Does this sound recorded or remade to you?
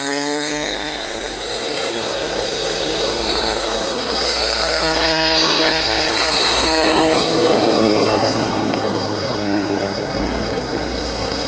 remade